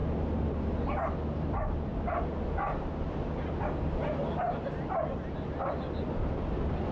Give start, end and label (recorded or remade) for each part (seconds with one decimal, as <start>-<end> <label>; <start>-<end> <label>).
0.0-6.9 recorded